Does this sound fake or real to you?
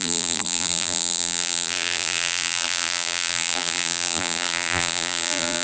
fake